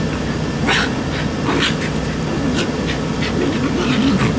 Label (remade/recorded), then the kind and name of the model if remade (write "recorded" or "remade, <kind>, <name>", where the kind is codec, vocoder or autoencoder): recorded